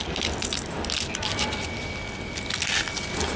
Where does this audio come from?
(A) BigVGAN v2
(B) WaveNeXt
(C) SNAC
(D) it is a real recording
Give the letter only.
D